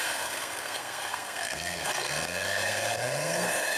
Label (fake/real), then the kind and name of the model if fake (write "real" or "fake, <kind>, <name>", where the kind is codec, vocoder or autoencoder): fake, codec, SNAC